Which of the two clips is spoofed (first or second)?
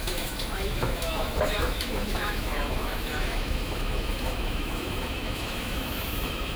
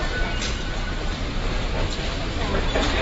first